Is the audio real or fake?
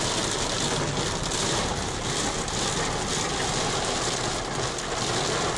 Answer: real